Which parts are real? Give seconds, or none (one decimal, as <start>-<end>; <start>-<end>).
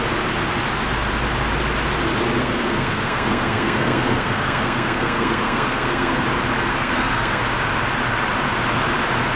0.0-2.4; 6.2-6.7; 7.4-9.4